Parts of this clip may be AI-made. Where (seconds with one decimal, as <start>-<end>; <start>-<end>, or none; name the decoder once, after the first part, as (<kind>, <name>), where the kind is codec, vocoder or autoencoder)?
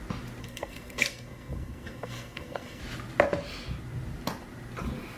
0.4-2.8 (codec, SNAC)